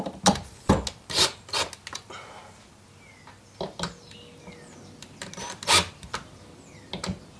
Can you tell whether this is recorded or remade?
recorded